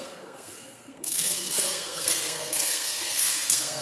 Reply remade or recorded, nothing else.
remade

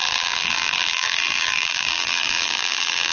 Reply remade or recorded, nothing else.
remade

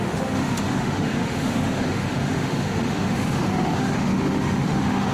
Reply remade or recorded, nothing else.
remade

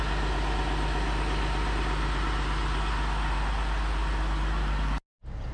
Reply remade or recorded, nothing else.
recorded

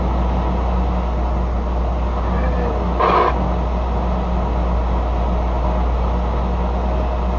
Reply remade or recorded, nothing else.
recorded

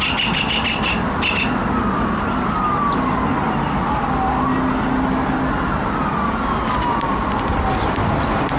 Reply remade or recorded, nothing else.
recorded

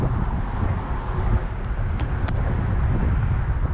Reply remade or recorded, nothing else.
recorded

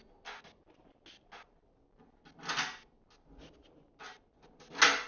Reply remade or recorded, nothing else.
recorded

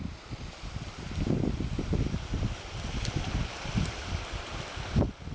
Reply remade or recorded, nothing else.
recorded